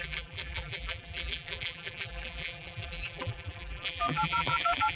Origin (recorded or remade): remade